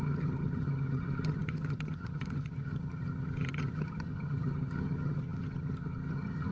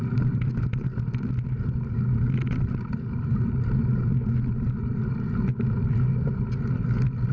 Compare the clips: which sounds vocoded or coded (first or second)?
first